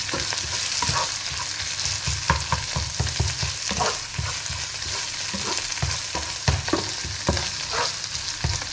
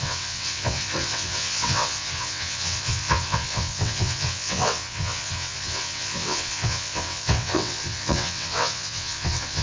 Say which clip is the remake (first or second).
second